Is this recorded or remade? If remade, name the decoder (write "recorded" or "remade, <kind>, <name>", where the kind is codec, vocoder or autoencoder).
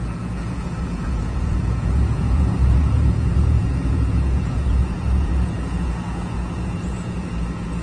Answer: remade, vocoder, Vocos